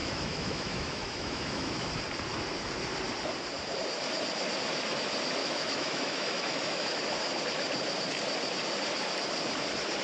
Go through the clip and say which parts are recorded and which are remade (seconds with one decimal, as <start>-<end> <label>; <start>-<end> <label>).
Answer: 0.0-1.9 remade; 1.9-5.4 recorded; 5.4-7.0 remade; 7.0-10.0 recorded